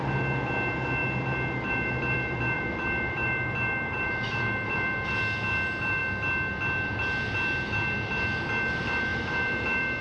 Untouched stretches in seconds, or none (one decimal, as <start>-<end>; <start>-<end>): 0.0-1.0; 5.2-9.1